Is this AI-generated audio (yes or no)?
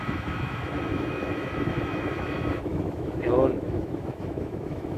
yes